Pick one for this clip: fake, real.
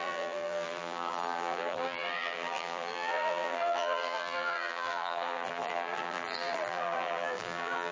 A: fake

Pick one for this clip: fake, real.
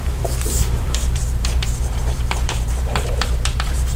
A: fake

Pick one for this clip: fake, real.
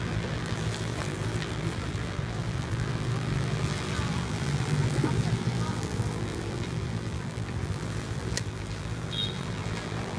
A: fake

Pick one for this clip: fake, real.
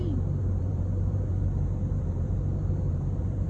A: fake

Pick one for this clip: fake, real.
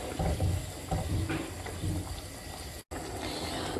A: real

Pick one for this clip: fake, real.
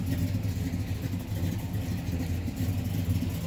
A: real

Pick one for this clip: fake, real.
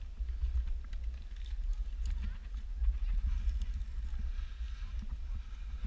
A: real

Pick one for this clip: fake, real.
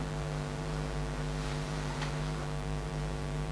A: fake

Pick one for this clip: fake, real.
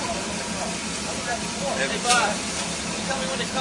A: real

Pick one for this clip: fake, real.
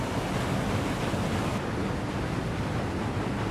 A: real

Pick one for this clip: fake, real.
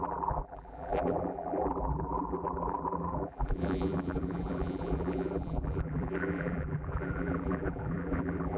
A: fake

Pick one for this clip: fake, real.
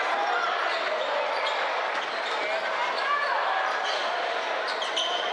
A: real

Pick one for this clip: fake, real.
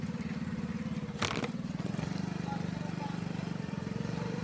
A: real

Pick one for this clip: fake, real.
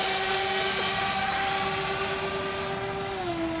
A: real